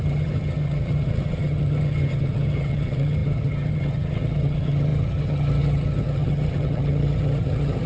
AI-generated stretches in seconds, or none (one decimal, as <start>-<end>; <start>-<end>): 0.0-7.9